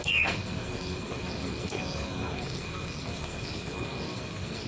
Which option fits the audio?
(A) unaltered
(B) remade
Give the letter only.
B